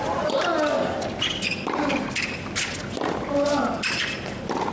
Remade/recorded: recorded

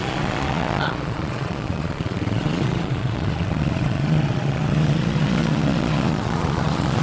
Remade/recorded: remade